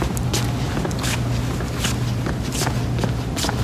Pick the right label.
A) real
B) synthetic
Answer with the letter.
A